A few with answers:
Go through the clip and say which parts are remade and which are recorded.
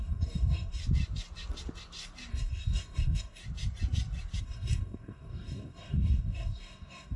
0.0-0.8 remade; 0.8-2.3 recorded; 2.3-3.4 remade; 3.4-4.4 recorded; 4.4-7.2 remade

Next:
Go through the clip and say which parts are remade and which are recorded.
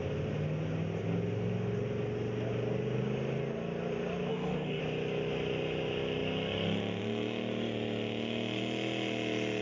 0.0-4.3 recorded; 4.3-4.8 remade; 4.8-9.6 recorded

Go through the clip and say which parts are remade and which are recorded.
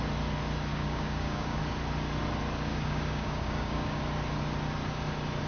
0.0-0.7 recorded; 0.7-1.6 remade; 1.6-2.7 recorded; 2.7-4.0 remade; 4.0-5.5 recorded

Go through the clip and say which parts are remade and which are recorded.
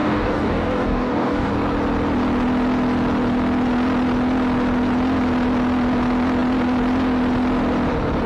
0.0-1.5 remade; 1.5-8.3 recorded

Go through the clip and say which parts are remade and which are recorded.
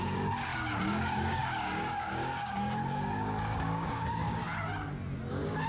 0.0-4.4 remade; 4.4-5.3 recorded; 5.3-5.7 remade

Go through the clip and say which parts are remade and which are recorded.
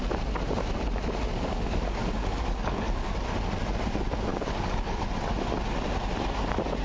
0.0-1.3 recorded; 1.3-3.1 remade; 3.1-4.3 recorded; 4.3-5.0 remade; 5.0-6.8 recorded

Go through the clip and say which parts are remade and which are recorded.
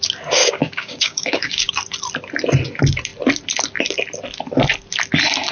0.0-0.4 recorded; 0.4-1.7 remade; 1.7-5.5 recorded